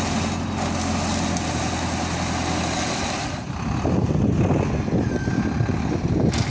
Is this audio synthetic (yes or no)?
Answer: no